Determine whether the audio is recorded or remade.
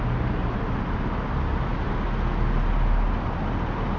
recorded